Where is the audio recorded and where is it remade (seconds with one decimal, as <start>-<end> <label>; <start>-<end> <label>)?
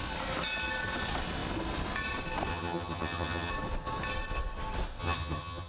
0.0-2.5 recorded; 2.5-3.5 remade; 3.5-5.0 recorded; 5.0-5.7 remade